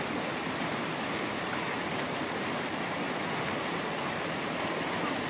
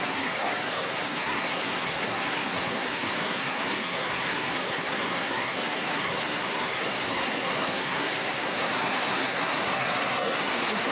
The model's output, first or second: second